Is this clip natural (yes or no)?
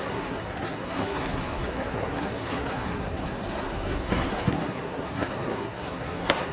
no